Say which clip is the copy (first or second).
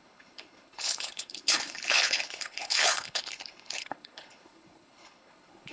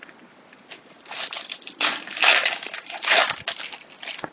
first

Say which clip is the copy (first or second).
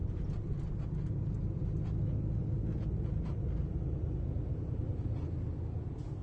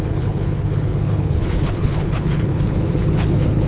second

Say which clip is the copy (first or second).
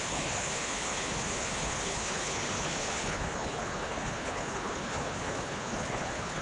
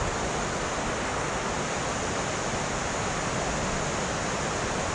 first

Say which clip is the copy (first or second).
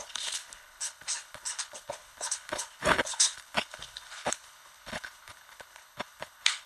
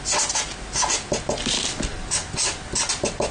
first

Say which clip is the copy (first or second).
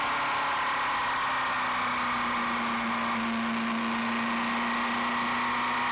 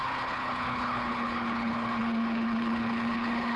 second